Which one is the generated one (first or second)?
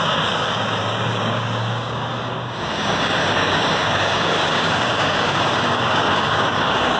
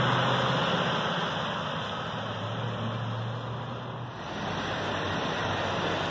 first